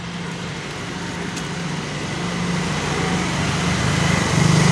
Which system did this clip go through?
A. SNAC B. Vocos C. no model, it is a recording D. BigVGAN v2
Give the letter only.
C